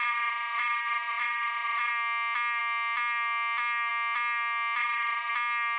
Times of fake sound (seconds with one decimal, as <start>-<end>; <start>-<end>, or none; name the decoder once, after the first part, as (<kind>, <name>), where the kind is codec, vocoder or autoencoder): 0.0-1.9 (vocoder, WaveNeXt); 4.8-5.3